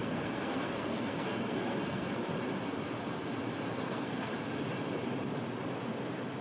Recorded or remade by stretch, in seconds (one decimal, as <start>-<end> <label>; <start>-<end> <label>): 0.0-2.3 remade; 2.3-3.7 recorded; 3.7-4.3 remade; 4.3-6.4 recorded